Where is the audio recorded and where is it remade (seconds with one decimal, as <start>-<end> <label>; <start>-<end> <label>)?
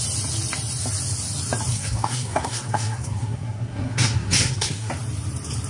0.0-1.7 recorded; 1.7-4.9 remade; 4.9-5.7 recorded